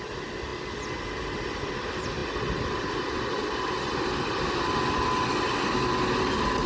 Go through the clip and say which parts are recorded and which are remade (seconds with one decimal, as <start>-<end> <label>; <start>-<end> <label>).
0.0-6.7 recorded